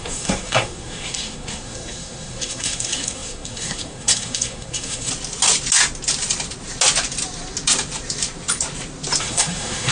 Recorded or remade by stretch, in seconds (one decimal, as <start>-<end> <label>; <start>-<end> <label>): 0.0-5.1 remade; 5.1-9.2 recorded; 9.2-9.9 remade